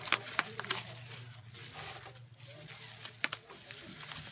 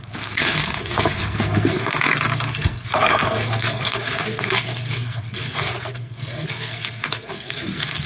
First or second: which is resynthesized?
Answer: second